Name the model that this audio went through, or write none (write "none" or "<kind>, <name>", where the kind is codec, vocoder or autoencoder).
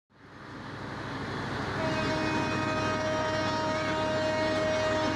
none